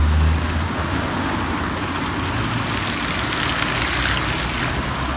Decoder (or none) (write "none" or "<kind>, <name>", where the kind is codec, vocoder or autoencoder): none